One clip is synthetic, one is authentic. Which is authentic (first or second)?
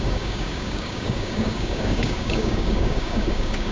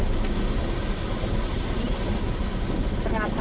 second